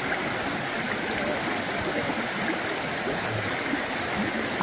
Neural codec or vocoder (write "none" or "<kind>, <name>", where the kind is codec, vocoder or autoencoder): none